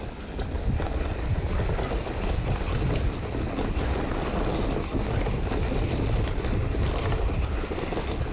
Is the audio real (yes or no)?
yes